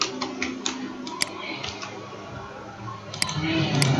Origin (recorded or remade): recorded